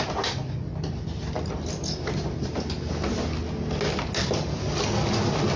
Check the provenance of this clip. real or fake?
real